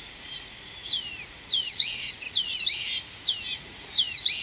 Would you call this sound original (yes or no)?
no